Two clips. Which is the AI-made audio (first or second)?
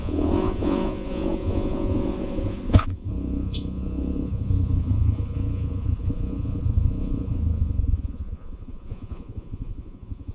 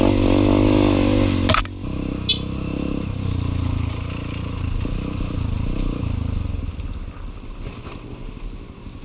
first